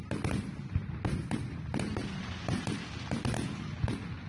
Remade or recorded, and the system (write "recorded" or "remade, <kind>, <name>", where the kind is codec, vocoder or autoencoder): recorded